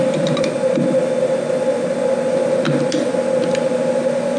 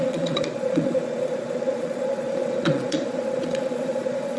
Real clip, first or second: first